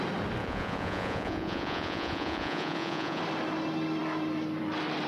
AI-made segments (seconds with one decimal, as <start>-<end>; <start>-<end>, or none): 0.4-3.2